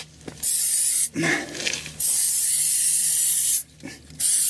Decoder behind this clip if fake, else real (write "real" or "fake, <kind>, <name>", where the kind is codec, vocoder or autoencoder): real